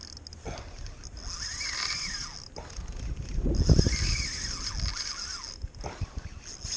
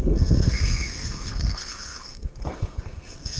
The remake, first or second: second